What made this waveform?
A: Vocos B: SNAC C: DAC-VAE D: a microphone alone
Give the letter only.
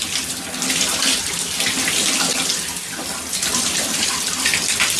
D